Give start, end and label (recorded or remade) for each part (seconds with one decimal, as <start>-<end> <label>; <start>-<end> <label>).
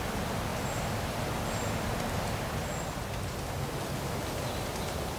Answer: 0.0-5.2 recorded